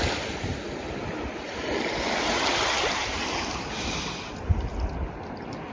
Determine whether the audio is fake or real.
real